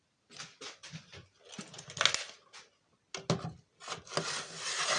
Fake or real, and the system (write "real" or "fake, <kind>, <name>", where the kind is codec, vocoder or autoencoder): real